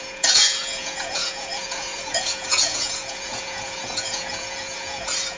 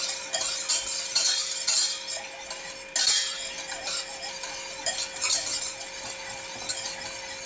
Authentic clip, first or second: second